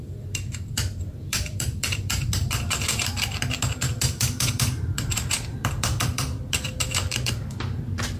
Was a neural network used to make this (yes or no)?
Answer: yes